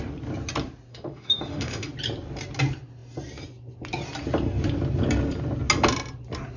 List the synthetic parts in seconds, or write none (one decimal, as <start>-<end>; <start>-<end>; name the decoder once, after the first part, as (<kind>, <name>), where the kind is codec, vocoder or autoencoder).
0.9-1.9 (autoencoder, DAC-VAE)